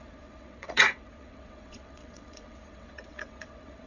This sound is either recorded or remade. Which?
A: remade